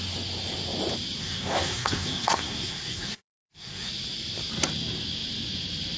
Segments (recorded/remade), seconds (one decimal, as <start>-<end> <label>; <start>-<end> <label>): 0.0-1.2 recorded; 1.2-3.9 remade; 3.9-6.0 recorded